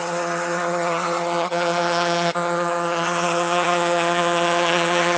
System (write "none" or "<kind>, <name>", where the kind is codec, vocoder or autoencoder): vocoder, HiFi-GAN